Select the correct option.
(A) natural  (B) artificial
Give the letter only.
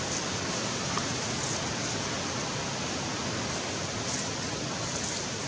A